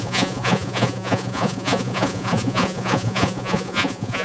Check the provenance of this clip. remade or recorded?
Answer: remade